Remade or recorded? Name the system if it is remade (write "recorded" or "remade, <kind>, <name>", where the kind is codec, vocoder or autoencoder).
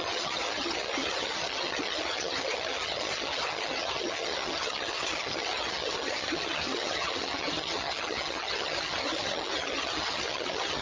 remade, vocoder, HiFi-GAN